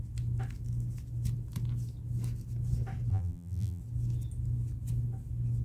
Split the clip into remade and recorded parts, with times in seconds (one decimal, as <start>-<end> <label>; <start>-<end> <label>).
0.0-3.1 recorded; 3.1-3.8 remade; 3.8-5.6 recorded